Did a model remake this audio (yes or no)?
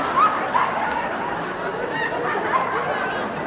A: no